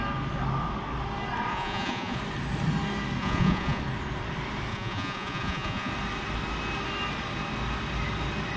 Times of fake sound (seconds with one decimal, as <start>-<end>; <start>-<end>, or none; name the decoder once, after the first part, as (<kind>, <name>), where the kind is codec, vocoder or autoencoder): 1.5-2.2 (vocoder, Vocos); 3.2-3.8; 4.7-5.9